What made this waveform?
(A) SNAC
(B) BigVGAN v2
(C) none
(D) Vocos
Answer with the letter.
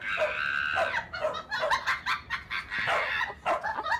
C